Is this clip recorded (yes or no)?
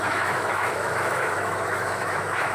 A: no